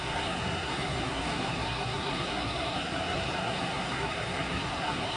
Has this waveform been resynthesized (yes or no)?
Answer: yes